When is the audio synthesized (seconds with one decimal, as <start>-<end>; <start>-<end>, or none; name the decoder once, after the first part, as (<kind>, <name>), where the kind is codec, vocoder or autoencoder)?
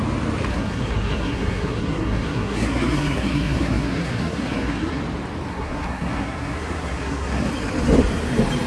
0.5-5.0 (codec, SNAC); 5.5-7.5